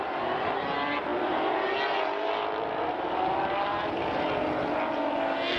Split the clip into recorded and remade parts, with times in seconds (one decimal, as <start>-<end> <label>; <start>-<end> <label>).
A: 0.0-5.6 recorded